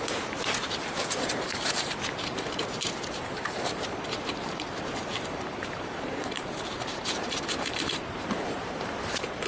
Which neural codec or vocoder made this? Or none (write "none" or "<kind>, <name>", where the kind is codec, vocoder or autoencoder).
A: vocoder, BigVGAN v2